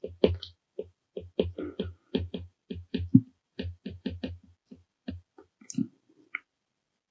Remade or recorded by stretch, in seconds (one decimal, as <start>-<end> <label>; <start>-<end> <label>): 0.0-7.1 recorded